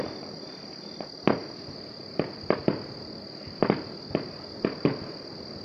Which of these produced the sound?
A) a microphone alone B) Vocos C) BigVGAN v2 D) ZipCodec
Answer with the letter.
A